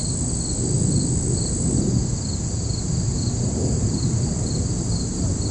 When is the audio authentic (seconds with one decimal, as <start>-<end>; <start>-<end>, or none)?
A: 0.0-5.5